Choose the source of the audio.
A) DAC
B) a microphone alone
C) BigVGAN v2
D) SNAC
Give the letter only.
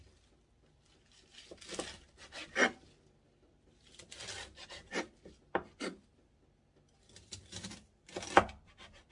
C